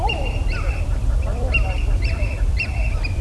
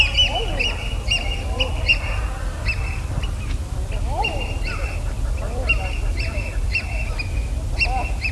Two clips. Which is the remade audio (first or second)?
first